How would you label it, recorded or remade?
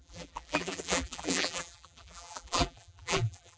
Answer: remade